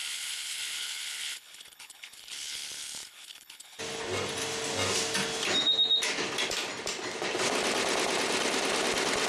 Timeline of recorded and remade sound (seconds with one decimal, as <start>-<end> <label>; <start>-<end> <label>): 0.0-3.8 remade; 3.8-9.3 recorded